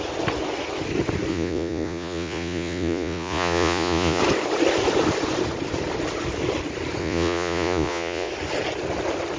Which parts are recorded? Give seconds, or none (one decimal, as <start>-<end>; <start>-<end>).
0.0-1.3; 4.2-7.0; 8.3-9.4